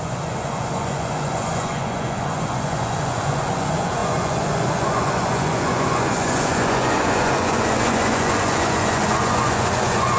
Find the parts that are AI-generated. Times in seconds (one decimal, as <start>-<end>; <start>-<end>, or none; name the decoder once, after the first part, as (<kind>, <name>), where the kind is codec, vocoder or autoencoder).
0.0-10.2 (vocoder, Vocos)

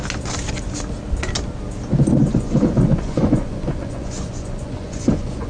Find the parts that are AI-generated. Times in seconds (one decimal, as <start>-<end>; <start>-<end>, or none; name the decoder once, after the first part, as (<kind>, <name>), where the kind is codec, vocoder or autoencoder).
2.2-5.5 (vocoder, Vocos)

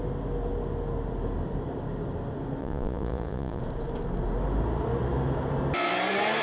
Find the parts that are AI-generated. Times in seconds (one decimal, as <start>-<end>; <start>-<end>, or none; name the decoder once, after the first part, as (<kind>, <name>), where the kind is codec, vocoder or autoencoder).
2.6-3.6 (vocoder, Vocos)

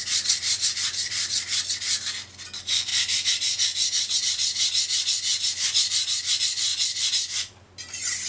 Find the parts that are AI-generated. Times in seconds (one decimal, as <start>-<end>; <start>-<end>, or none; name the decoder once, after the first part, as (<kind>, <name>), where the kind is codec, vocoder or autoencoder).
none

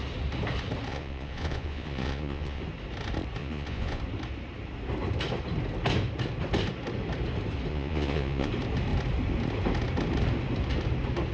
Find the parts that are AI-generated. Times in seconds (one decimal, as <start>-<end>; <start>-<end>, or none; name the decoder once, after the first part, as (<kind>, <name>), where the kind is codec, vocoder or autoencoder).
0.9-2.6 (vocoder, Vocos); 3.4-4.0; 7.7-8.5

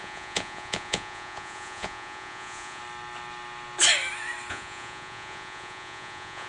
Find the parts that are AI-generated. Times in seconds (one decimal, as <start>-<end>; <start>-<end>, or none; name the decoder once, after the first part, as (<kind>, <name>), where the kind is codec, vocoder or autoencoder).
0.0-2.8 (vocoder, Vocos); 4.5-6.5

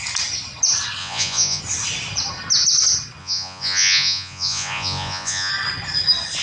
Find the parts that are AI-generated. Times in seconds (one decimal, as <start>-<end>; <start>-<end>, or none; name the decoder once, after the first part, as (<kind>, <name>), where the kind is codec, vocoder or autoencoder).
1.0-1.6 (vocoder, Vocos); 3.2-5.5